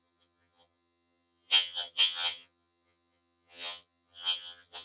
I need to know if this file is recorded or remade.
remade